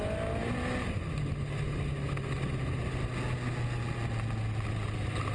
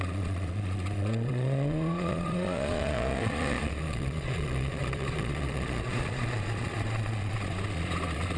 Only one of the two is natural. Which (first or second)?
first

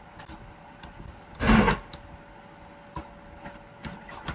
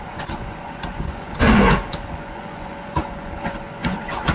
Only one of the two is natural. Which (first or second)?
first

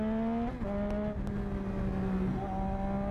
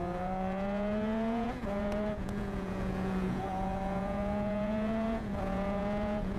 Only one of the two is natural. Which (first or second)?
first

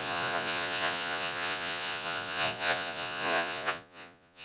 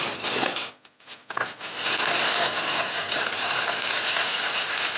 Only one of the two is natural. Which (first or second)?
second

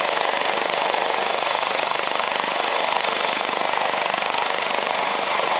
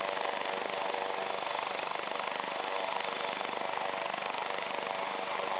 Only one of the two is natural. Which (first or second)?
second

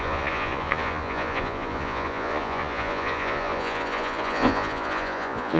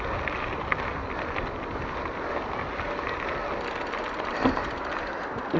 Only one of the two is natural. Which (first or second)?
second